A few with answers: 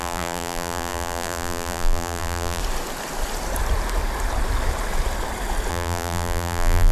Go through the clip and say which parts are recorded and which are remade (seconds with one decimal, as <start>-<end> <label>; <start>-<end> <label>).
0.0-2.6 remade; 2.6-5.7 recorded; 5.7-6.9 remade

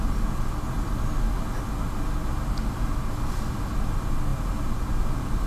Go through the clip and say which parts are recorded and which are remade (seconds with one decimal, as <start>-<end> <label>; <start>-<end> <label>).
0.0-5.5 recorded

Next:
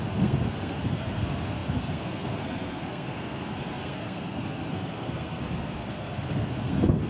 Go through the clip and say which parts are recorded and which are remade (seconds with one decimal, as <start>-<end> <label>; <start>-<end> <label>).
0.0-7.1 remade

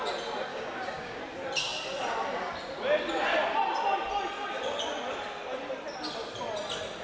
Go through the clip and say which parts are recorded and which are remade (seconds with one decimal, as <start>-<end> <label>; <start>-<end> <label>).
0.0-0.5 recorded; 0.5-1.2 remade; 1.2-7.0 recorded

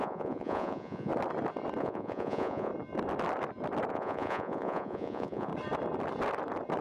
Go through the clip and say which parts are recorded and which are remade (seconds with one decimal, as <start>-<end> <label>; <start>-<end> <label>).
0.0-1.1 remade; 1.1-1.8 recorded; 1.8-2.7 remade; 2.7-3.9 recorded; 3.9-5.5 remade; 5.5-6.8 recorded

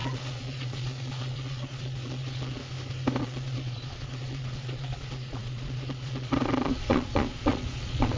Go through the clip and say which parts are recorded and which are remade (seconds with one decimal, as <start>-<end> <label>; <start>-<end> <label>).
0.0-2.6 remade; 2.6-3.2 recorded; 3.2-8.2 remade

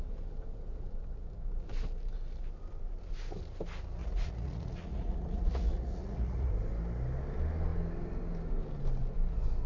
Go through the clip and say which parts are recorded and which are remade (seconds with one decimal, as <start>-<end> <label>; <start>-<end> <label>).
0.0-4.0 recorded; 4.0-6.5 remade; 6.5-9.7 recorded